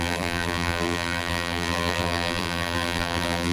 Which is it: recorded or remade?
remade